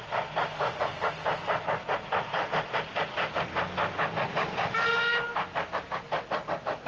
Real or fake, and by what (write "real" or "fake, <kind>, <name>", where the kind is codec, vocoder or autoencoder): real